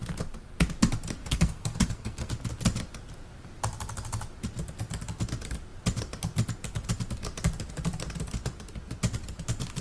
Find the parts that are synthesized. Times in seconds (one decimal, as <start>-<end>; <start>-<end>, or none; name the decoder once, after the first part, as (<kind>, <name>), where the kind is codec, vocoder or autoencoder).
1.2-2.3 (codec, SNAC)